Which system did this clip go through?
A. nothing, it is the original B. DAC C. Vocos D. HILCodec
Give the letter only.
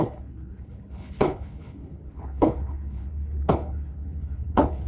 D